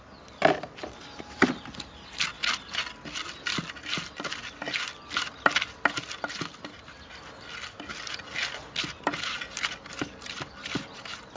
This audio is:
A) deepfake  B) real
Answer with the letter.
B